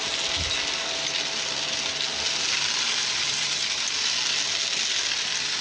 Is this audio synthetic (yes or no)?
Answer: no